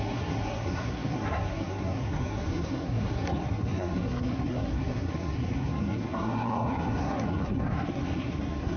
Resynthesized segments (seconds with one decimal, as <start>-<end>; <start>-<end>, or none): 0.0-8.8